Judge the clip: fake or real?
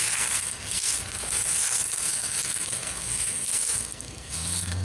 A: fake